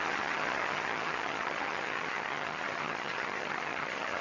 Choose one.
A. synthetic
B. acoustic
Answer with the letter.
A